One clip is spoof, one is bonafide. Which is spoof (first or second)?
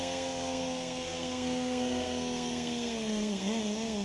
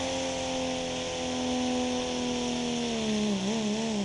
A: first